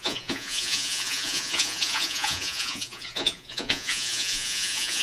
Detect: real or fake fake